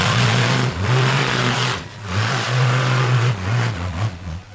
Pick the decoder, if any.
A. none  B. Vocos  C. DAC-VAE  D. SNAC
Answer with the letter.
B